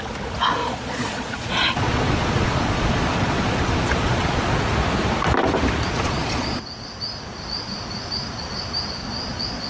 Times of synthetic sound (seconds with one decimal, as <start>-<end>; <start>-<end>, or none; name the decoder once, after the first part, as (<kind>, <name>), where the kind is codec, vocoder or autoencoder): 0.6-4.4 (vocoder, Vocos); 5.9-6.6; 9.0-9.7